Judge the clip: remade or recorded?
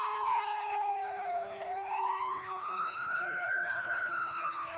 remade